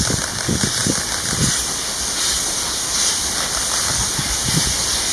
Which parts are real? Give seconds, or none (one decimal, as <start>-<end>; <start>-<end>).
0.0-5.1